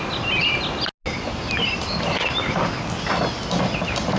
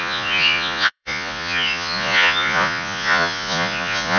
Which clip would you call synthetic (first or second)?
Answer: second